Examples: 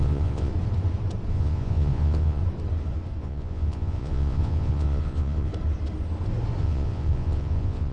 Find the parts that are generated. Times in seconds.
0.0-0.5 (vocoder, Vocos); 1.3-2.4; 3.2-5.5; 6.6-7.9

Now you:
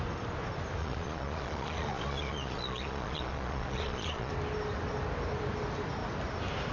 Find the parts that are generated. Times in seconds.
0.8-4.3 (vocoder, Vocos)

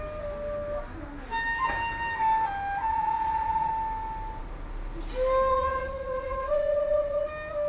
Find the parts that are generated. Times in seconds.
2.9-3.7 (vocoder, Vocos); 5.5-7.3

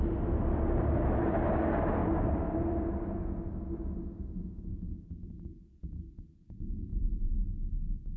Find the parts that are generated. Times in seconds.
4.7-6.0 (vocoder, Vocos); 6.9-7.5

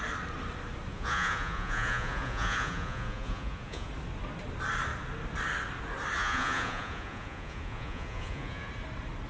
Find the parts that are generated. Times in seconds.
0.9-3.9 (vocoder, Vocos); 6.2-8.7

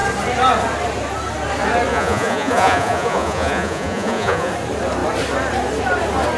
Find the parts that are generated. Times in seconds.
1.9-4.5 (vocoder, Vocos)